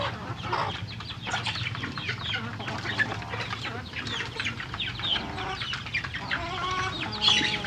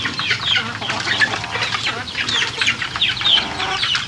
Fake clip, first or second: second